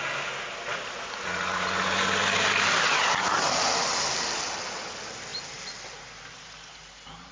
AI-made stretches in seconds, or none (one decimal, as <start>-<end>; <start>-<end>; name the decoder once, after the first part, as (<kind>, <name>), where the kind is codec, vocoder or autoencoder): none